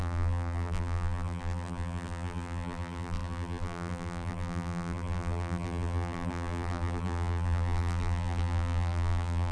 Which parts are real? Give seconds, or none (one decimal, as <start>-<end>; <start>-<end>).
none